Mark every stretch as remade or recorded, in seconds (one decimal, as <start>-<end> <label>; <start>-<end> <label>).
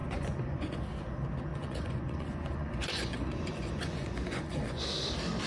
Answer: 0.0-0.8 remade; 0.8-1.5 recorded; 1.5-4.8 remade; 4.8-5.5 recorded